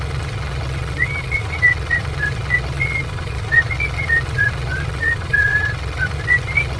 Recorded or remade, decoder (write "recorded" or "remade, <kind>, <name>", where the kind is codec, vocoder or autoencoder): remade, vocoder, Vocos